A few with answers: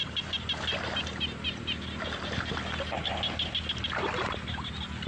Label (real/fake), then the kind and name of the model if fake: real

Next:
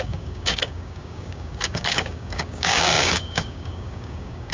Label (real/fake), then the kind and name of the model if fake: fake, codec, DAC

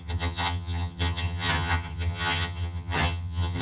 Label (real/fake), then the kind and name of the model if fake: fake, vocoder, HiFi-GAN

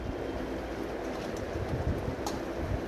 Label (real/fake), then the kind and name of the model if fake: real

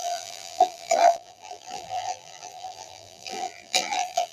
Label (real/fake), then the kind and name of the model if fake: fake, vocoder, BigVGAN v2